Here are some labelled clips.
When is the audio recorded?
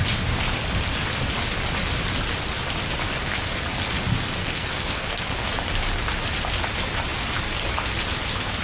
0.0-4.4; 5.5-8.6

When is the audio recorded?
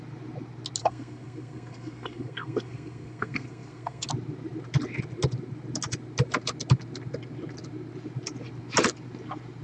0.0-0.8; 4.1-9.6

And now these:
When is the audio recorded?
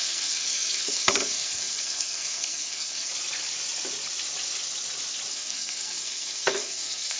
3.1-5.3